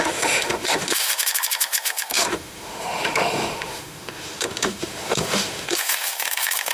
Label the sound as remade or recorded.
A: remade